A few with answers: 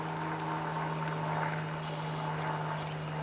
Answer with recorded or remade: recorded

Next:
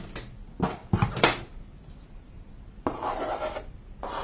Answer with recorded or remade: recorded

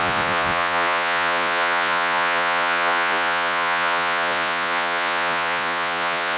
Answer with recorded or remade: remade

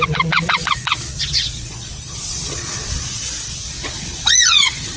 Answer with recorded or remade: remade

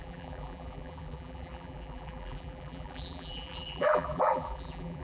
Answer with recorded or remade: remade